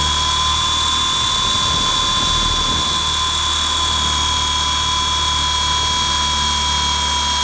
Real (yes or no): yes